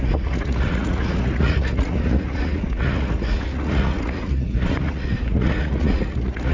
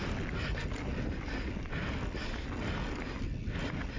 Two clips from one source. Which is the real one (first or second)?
second